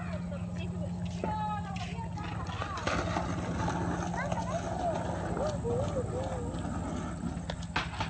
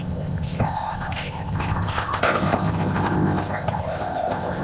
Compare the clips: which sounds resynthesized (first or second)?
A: second